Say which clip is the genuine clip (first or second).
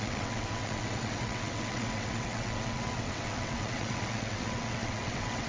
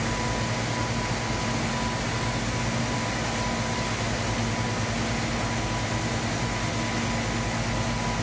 second